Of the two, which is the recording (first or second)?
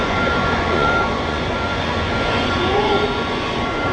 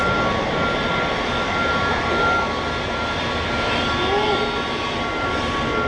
second